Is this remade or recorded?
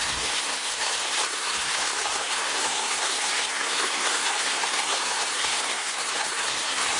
remade